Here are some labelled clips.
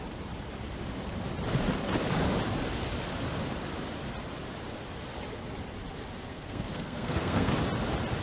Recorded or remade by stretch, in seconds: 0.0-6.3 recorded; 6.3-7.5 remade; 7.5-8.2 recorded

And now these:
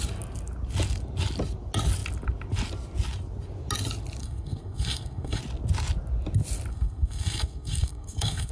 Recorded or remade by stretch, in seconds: 0.0-4.2 recorded; 4.2-5.4 remade; 5.4-6.7 recorded; 6.7-8.5 remade

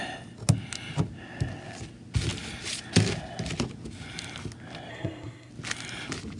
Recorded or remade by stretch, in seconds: 0.0-4.9 recorded; 4.9-5.5 remade; 5.5-6.4 recorded

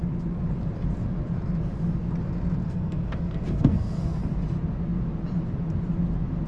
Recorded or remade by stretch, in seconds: 0.0-2.6 recorded; 2.6-4.2 remade; 4.2-6.5 recorded

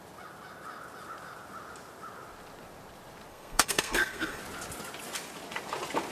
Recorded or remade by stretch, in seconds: 0.0-3.3 recorded; 3.3-4.4 remade; 4.4-6.1 recorded

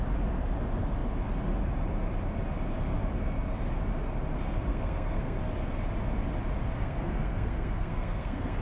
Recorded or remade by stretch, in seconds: 0.0-4.7 recorded; 4.7-5.4 remade; 5.4-6.8 recorded; 6.8-8.6 remade